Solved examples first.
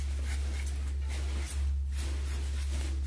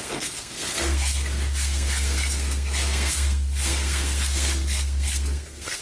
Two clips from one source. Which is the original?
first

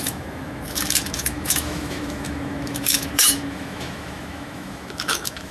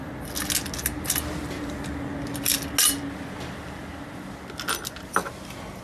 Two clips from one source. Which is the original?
second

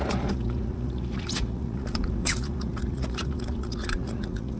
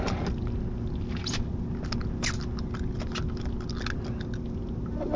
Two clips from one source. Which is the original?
second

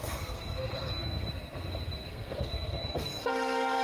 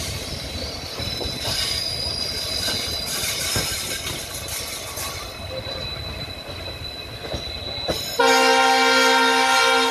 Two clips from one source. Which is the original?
second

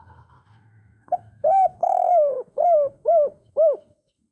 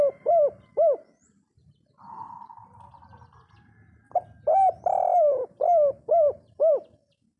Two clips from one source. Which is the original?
second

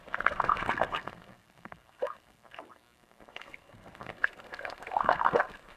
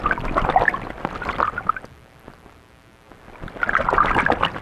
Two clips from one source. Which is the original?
second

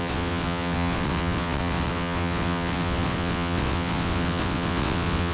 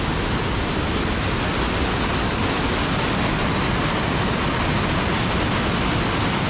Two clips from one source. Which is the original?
second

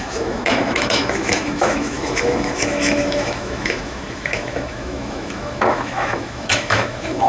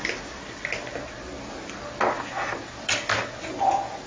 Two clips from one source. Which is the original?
second